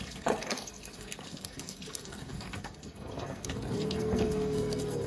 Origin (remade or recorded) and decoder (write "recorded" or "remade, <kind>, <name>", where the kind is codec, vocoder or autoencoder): remade, codec, SNAC